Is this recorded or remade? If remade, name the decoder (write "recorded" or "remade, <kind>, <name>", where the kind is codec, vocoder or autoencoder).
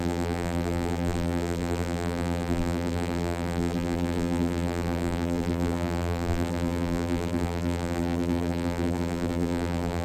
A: remade, vocoder, BigVGAN v2